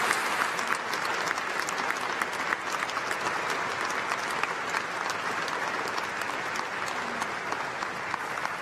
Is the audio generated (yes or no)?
no